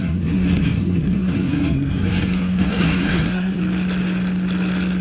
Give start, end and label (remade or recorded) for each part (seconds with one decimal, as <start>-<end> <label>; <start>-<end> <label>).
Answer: 0.0-3.6 remade; 3.6-5.0 recorded